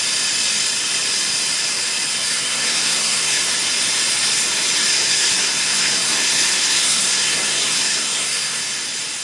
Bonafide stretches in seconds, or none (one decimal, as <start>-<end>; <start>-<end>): 0.0-2.1; 3.4-4.9; 8.6-9.2